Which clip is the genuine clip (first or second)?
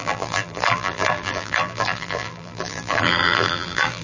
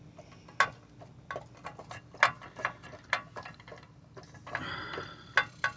second